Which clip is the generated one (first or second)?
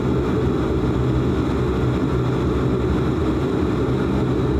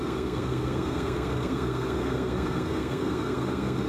second